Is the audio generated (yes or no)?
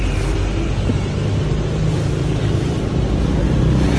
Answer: no